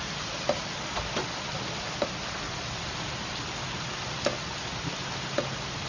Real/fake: real